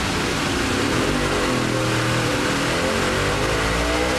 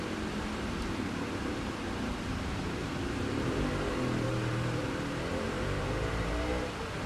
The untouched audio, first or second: first